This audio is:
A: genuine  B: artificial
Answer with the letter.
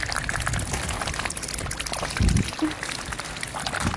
A